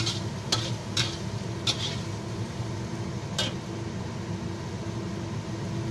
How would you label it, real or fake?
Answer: real